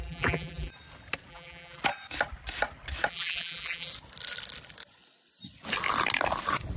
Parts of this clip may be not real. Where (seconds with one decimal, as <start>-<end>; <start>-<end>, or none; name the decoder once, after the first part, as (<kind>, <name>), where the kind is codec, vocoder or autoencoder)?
0.0-0.7 (vocoder, BigVGAN v2); 1.3-1.8; 3.1-3.9